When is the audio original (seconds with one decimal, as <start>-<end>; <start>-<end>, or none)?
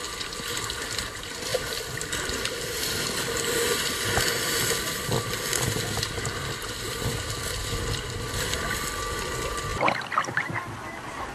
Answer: 0.0-1.5; 3.3-6.3; 7.8-9.7; 10.5-11.3